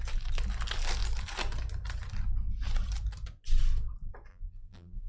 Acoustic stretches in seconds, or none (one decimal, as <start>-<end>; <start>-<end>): 0.0-4.3